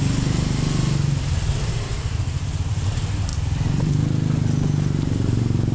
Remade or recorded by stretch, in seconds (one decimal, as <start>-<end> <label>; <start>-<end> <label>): 0.0-3.3 recorded; 3.3-4.1 remade; 4.1-5.7 recorded

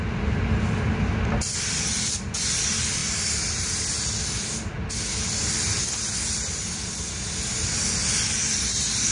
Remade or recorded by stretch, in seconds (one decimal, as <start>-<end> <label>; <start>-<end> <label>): 0.0-9.1 recorded